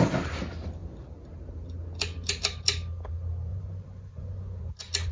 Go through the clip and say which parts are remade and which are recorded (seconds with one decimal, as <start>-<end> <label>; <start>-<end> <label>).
0.0-3.5 recorded; 3.5-4.6 remade; 4.6-5.1 recorded